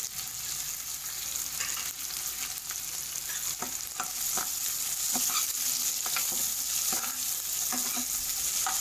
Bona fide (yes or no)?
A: yes